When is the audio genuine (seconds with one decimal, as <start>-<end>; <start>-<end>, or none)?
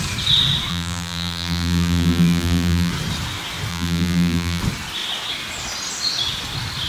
0.0-0.7; 2.9-3.7; 4.6-6.9